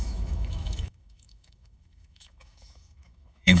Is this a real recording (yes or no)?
no